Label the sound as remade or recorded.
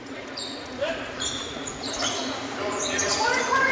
remade